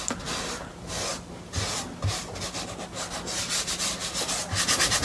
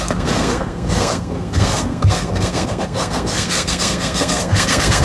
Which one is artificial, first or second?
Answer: second